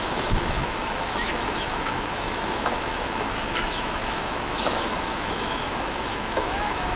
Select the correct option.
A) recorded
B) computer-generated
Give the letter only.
B